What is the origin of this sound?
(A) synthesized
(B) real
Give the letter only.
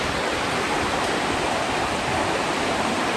B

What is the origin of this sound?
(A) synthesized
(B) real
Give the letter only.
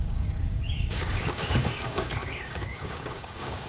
A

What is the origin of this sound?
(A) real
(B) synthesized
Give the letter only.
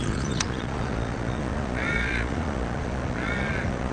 B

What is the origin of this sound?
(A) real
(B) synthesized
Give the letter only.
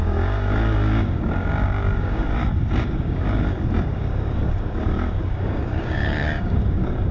B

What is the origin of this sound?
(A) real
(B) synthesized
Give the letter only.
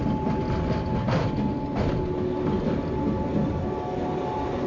A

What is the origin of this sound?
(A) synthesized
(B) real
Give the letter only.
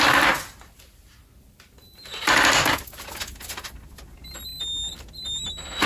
B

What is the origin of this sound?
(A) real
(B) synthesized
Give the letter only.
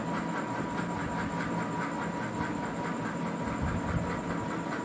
A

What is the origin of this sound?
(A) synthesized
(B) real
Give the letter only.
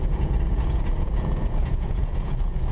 A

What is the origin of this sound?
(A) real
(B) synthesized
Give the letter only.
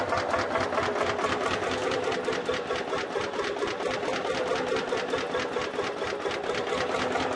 A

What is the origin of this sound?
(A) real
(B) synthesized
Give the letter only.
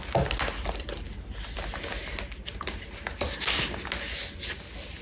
A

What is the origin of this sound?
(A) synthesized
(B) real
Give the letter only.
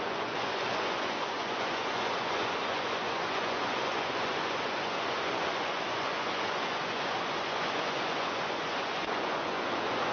A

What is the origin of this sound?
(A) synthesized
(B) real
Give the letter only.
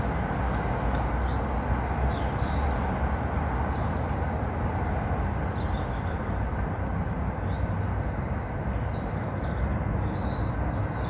B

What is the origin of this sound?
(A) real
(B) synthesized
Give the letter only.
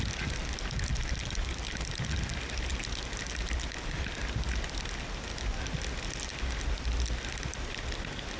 A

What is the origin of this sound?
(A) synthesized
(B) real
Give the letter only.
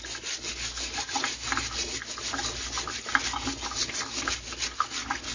B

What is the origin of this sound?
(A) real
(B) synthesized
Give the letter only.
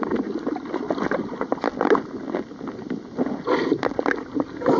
A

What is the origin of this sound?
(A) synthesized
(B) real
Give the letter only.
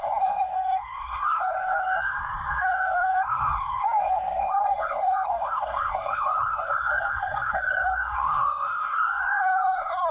A